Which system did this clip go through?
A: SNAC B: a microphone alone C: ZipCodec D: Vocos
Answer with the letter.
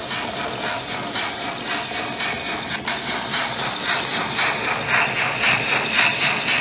B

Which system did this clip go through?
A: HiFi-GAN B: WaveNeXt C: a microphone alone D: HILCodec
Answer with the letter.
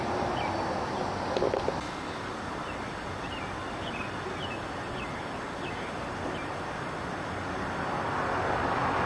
C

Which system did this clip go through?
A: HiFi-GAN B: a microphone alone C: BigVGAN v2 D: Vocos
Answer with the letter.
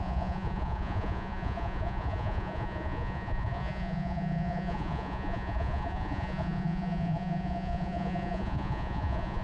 D